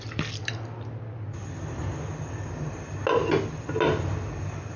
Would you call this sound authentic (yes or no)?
yes